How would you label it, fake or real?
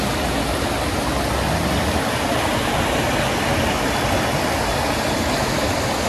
real